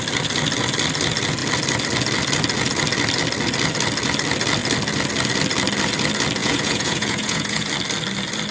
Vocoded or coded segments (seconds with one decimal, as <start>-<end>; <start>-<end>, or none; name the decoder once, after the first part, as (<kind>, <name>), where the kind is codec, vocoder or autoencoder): 6.4-7.7 (vocoder, Vocos)